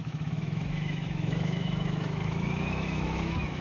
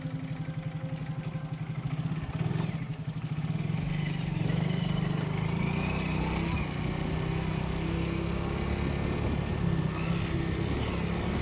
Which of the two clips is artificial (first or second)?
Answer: first